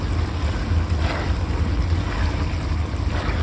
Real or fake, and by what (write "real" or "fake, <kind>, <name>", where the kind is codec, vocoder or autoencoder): real